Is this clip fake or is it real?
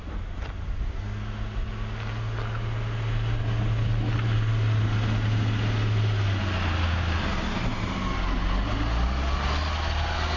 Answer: real